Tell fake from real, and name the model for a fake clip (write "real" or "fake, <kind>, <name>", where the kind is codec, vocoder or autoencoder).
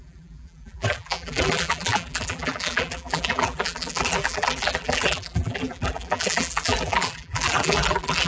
fake, vocoder, BigVGAN v2